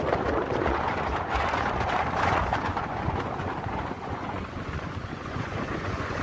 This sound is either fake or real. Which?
fake